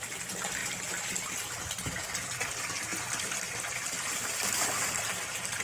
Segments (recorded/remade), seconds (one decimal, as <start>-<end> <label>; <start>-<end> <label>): 0.0-5.6 recorded